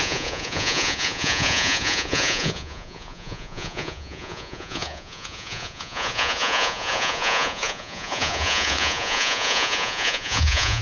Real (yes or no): no